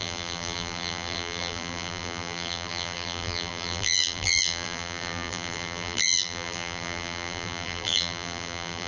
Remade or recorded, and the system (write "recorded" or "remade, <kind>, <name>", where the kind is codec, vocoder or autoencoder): remade, vocoder, BigVGAN v2